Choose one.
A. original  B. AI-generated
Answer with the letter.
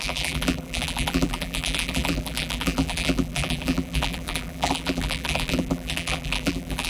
B